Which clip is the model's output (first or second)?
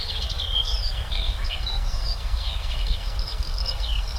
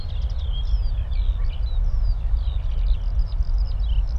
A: first